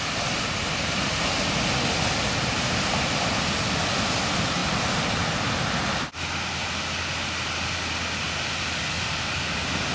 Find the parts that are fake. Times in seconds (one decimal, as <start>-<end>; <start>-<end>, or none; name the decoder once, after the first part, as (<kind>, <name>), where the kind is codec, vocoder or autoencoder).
none